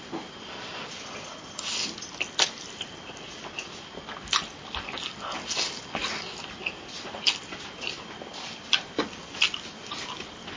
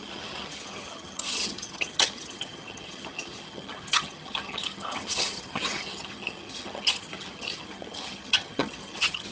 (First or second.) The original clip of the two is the first